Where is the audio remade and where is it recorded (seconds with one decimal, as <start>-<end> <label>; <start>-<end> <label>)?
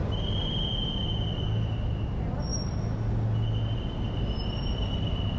0.0-5.4 recorded